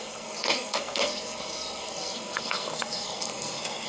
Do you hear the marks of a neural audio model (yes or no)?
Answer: yes